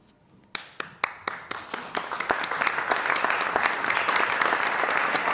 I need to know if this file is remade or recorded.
recorded